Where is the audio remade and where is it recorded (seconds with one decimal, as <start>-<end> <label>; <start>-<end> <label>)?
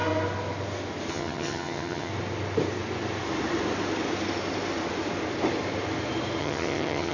0.0-1.1 recorded; 1.1-2.1 remade; 2.1-6.4 recorded; 6.4-7.1 remade